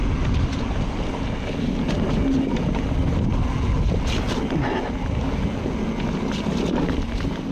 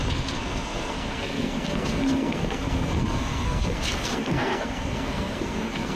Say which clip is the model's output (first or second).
second